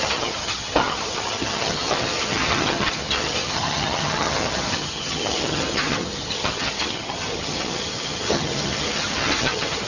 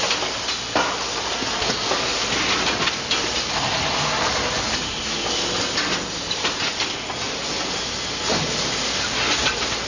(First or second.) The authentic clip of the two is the second